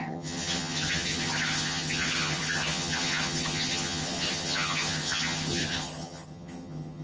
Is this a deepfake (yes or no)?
yes